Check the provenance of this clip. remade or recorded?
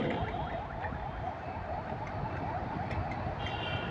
recorded